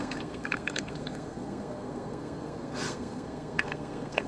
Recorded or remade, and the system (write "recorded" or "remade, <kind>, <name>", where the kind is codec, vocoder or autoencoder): remade, codec, SNAC